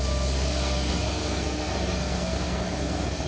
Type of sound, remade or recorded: remade